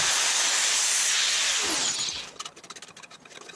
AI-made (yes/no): no